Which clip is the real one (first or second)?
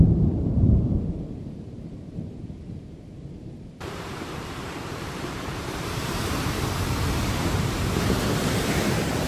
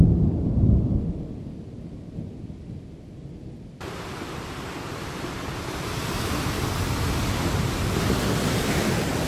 second